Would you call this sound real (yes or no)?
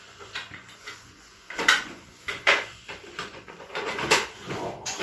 no